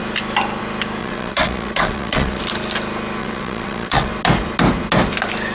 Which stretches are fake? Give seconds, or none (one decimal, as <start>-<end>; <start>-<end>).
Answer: 1.0-2.4; 3.2-4.1